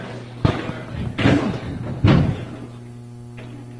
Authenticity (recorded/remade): recorded